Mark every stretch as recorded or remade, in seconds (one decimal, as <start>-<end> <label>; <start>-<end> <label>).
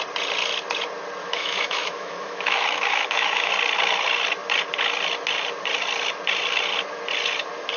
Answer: 0.0-1.2 recorded; 1.2-3.5 remade; 3.5-7.8 recorded